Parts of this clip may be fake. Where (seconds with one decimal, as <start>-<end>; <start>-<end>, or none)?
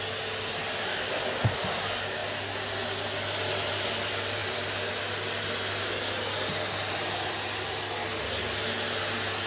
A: none